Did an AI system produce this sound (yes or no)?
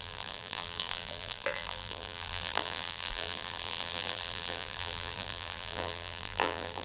yes